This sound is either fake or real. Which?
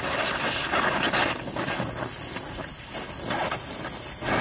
real